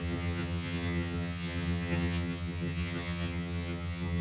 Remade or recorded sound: remade